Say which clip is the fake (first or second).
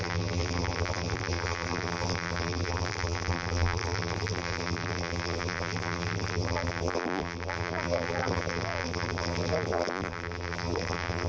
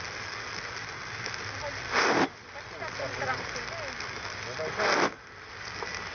first